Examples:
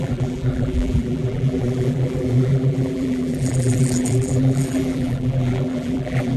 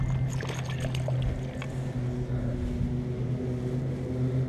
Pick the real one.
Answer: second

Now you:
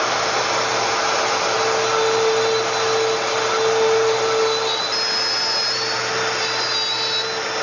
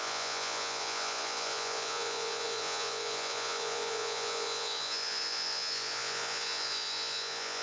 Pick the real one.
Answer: first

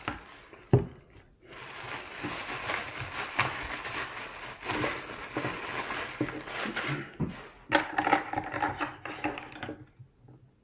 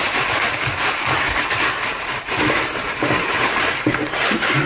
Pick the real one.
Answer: first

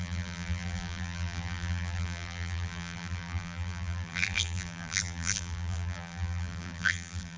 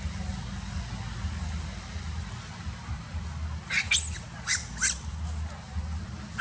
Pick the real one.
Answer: second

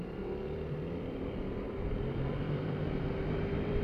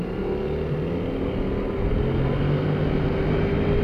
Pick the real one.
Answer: second